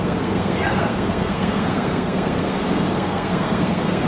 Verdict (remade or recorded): remade